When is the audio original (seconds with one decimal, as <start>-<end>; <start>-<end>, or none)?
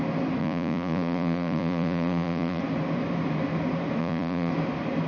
0.0-0.4; 2.6-4.0; 4.5-5.1